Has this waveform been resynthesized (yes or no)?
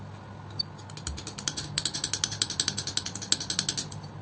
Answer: no